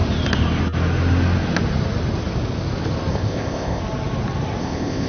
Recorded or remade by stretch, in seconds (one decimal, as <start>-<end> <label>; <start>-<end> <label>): 0.0-3.1 recorded; 3.1-3.8 remade; 3.8-4.6 recorded; 4.6-5.1 remade